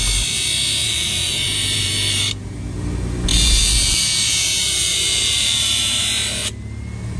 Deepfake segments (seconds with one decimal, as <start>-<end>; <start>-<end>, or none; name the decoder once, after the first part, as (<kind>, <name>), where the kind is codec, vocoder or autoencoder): 0.8-2.6 (vocoder, BigVGAN v2); 3.3-6.0